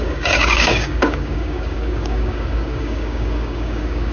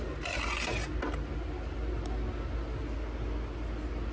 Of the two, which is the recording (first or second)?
second